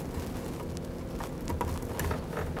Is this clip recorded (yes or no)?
yes